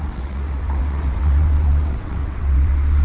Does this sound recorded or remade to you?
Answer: remade